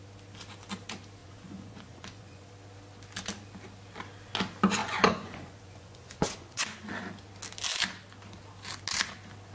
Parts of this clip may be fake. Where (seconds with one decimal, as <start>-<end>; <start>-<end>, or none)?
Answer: 1.2-2.5; 4.8-6.9